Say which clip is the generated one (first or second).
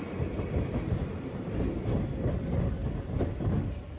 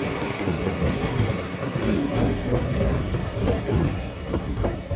second